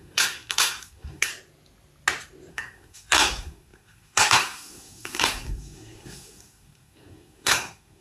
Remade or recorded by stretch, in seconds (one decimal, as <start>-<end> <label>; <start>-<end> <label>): 0.0-1.3 remade; 1.3-2.5 recorded; 2.5-8.0 remade